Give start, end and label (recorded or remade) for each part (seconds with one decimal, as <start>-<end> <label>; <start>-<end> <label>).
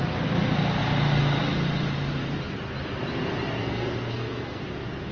0.0-3.6 recorded; 3.6-4.6 remade; 4.6-5.1 recorded